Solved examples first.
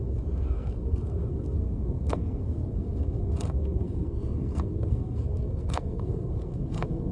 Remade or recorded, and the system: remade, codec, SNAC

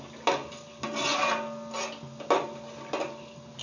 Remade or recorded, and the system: recorded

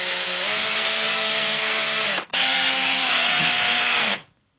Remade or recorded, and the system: remade, codec, SNAC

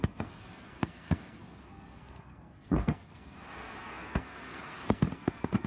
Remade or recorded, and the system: remade, codec, SNAC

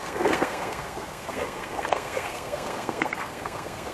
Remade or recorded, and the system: remade, codec, SNAC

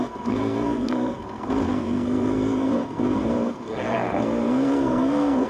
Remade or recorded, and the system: remade, codec, SNAC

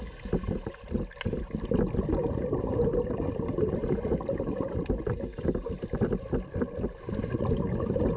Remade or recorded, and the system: recorded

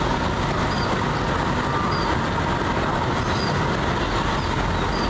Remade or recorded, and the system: recorded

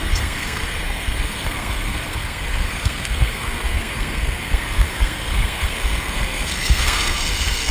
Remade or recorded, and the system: remade, codec, SNAC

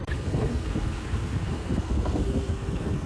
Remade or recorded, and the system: remade, codec, SNAC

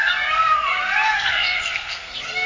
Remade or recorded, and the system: remade, codec, SNAC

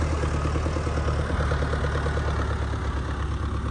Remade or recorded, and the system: recorded